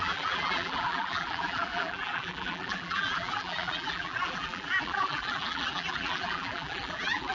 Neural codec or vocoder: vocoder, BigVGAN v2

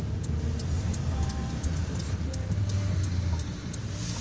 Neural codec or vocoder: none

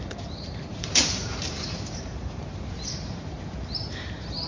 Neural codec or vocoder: vocoder, BigVGAN v2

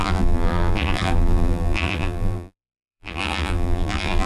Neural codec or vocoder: vocoder, BigVGAN v2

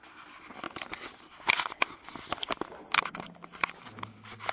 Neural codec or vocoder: none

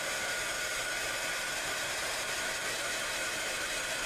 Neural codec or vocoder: vocoder, BigVGAN v2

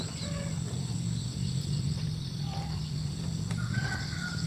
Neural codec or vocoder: none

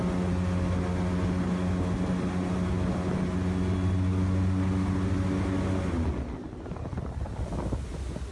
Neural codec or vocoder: none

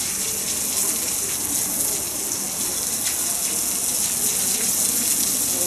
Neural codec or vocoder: none